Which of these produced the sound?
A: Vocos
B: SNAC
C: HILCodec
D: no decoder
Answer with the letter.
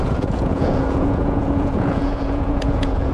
A